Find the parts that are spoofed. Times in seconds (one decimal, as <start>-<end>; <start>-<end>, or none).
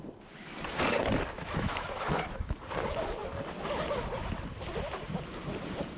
1.4-2.6